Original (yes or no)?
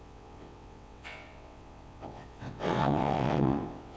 no